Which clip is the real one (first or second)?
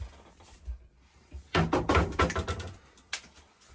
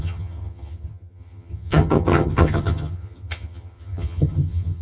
first